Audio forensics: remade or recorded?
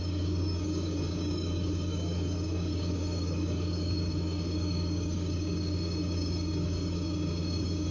remade